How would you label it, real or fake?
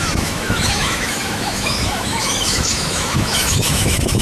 fake